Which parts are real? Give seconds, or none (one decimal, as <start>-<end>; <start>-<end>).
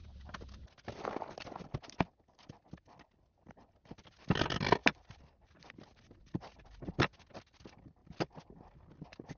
0.0-9.4